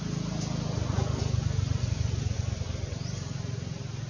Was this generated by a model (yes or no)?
no